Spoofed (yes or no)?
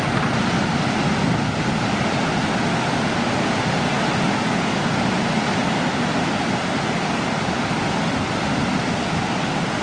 no